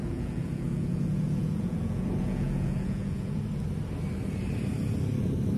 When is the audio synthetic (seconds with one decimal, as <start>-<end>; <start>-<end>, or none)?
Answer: 0.0-3.4